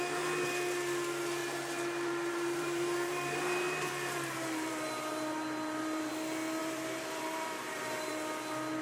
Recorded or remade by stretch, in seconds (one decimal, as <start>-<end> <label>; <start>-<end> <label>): 0.0-1.4 recorded; 1.4-6.1 remade; 6.1-6.6 recorded; 6.6-8.1 remade; 8.1-8.8 recorded